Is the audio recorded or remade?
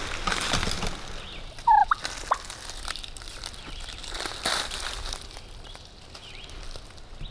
recorded